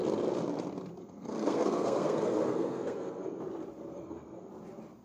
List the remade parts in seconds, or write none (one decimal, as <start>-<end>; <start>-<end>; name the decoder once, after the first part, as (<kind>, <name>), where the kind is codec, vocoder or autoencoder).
1.0-3.4 (codec, SNAC); 3.9-4.5